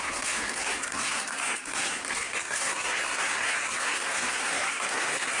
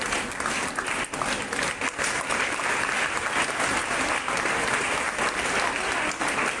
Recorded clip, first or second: second